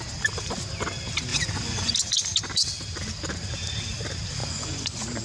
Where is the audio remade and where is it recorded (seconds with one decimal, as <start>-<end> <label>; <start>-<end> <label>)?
0.0-1.3 recorded; 1.3-1.9 remade; 1.9-4.4 recorded; 4.4-5.2 remade